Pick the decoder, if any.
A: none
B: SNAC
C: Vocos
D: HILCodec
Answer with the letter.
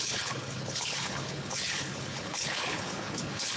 D